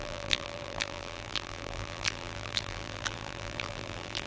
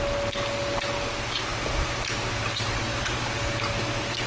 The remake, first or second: first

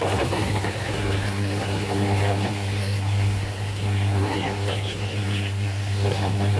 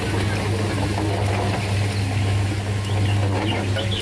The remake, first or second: first